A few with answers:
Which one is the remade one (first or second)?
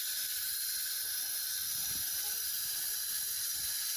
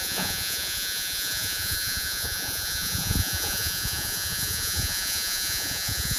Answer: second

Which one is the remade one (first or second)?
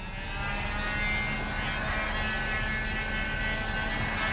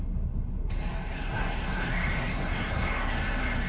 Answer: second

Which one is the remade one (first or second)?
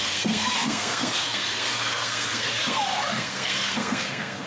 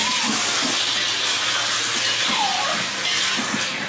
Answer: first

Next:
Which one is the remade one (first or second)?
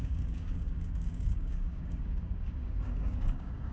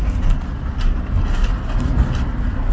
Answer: first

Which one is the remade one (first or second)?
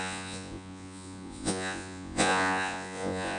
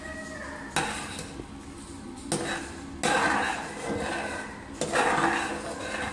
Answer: first